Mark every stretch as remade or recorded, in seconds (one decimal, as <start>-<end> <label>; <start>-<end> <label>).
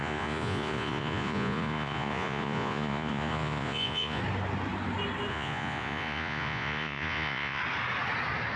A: 0.0-4.2 remade; 4.2-5.3 recorded; 5.3-7.6 remade; 7.6-8.6 recorded